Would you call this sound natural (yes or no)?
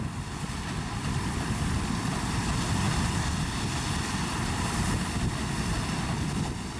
yes